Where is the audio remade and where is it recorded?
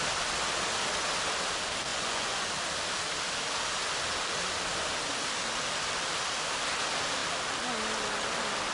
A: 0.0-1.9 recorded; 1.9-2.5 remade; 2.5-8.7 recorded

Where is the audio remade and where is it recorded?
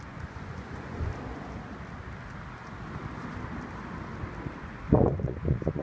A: 0.0-1.1 remade; 1.1-4.6 recorded; 4.6-5.8 remade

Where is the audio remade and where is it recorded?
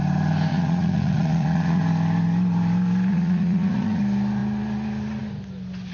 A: 0.0-0.5 recorded; 0.5-1.8 remade; 1.8-3.1 recorded; 3.1-4.0 remade; 4.0-5.9 recorded